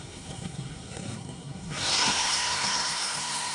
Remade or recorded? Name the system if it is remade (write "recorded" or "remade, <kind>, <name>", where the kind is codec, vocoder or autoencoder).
remade, codec, SNAC